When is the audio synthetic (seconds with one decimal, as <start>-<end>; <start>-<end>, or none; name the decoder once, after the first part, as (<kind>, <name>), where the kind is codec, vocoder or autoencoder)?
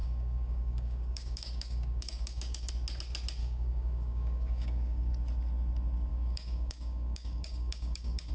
0.0-2.7 (codec, DAC); 3.4-5.1; 6.1-8.3